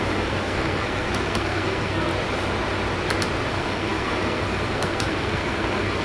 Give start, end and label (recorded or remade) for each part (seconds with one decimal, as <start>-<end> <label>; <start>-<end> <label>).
0.0-2.1 remade; 2.1-3.5 recorded; 3.5-6.0 remade